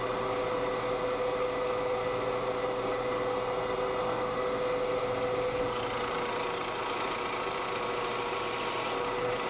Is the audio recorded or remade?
recorded